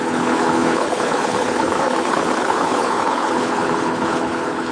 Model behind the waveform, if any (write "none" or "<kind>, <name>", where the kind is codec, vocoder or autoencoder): codec, HILCodec